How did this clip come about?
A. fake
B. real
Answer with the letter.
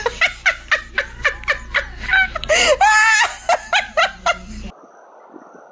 B